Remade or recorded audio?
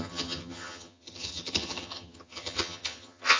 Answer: remade